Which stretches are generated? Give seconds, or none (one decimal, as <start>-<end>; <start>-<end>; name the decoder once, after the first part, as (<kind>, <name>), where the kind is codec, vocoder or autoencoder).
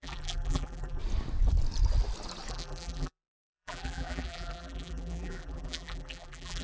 0.0-1.0 (vocoder, BigVGAN v2); 2.5-6.6